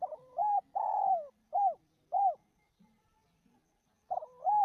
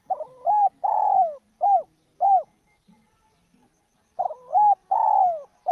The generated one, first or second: first